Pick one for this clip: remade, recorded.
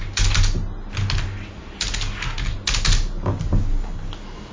recorded